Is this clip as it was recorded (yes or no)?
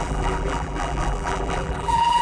no